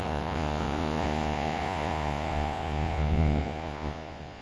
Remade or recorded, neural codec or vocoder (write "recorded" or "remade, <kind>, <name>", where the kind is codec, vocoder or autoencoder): remade, vocoder, Vocos